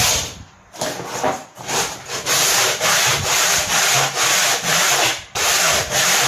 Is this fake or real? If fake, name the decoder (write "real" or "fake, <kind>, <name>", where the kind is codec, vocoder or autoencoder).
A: fake, vocoder, BigVGAN v2